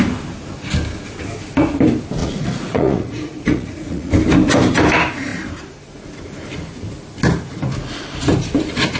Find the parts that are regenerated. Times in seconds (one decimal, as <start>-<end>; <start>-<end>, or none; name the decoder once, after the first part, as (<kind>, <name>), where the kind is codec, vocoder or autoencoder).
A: 2.2-4.1 (vocoder, Vocos)